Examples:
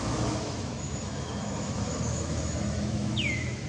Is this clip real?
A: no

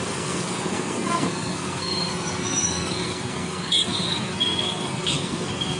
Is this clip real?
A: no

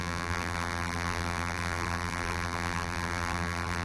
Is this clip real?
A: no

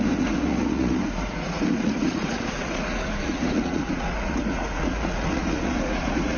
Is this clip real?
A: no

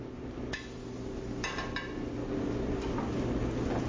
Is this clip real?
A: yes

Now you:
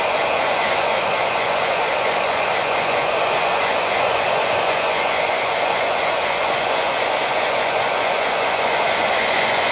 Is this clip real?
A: no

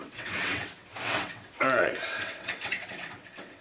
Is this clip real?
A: no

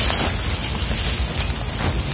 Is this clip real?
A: yes